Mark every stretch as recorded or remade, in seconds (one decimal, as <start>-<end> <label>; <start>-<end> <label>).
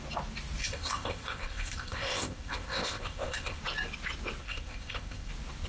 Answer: 0.0-0.6 recorded; 0.6-3.6 remade; 3.6-4.4 recorded; 4.4-5.3 remade; 5.3-5.7 recorded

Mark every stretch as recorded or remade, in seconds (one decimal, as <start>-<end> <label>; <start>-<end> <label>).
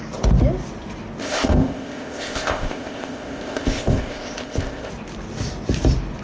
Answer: 0.0-1.2 recorded; 1.2-4.9 remade; 4.9-6.2 recorded